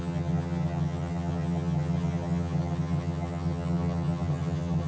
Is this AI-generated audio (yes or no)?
yes